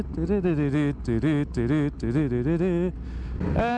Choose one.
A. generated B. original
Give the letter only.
B